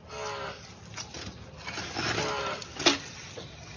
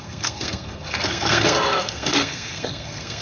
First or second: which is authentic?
first